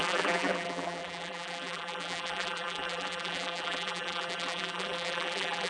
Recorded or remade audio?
remade